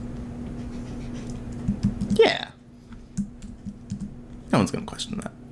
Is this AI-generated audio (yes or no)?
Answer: no